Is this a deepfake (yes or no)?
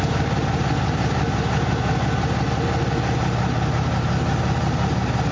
no